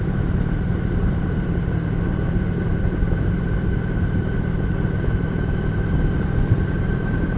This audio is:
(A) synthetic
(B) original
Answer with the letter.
A